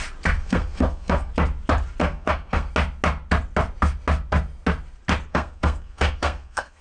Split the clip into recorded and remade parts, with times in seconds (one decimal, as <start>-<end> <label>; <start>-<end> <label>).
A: 0.0-0.4 recorded; 0.4-1.3 remade; 1.3-2.0 recorded; 2.0-2.7 remade; 2.7-5.3 recorded; 5.3-6.8 remade

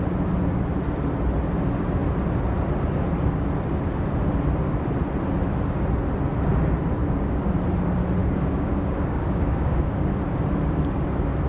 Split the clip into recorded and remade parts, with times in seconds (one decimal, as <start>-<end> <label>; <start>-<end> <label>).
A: 0.0-7.0 recorded; 7.0-7.5 remade; 7.5-8.2 recorded; 8.2-10.0 remade; 10.0-11.5 recorded

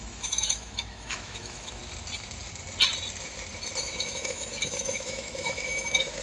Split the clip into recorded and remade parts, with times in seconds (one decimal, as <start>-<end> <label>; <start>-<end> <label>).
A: 0.0-1.8 remade; 1.8-3.8 recorded; 3.8-6.2 remade

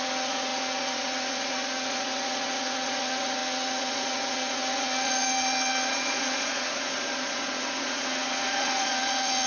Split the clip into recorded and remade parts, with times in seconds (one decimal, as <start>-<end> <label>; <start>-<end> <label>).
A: 0.0-9.5 remade

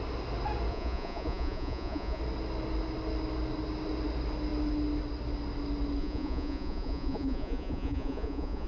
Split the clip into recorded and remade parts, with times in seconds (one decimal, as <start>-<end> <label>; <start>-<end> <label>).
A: 0.0-0.7 recorded; 0.7-2.2 remade; 2.2-6.0 recorded; 6.0-8.7 remade

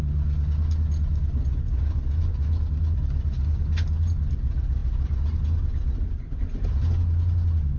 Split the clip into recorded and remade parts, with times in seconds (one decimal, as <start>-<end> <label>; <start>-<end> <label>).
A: 0.0-7.8 recorded

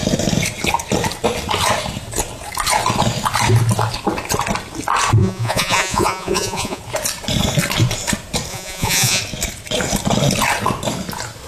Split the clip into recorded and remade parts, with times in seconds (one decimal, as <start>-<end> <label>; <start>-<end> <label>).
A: 0.0-5.2 recorded; 5.2-6.8 remade; 6.8-8.5 recorded; 8.5-9.2 remade; 9.2-11.5 recorded

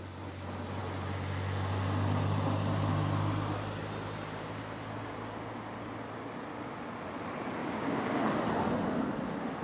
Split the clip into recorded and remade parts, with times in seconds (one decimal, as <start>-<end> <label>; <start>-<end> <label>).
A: 0.0-7.6 recorded; 7.6-8.2 remade; 8.2-9.6 recorded